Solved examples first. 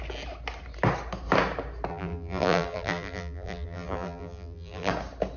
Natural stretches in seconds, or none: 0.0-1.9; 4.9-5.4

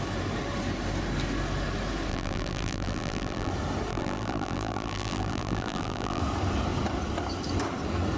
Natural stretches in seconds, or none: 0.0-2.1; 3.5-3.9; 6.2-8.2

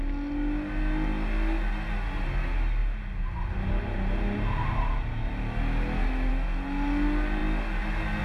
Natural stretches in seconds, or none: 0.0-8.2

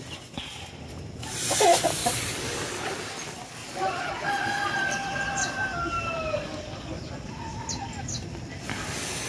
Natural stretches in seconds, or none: 0.0-2.0; 3.1-3.6; 8.0-9.3

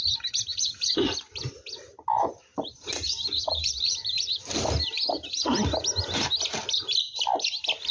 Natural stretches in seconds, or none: 0.0-0.5; 1.4-2.5; 4.6-7.9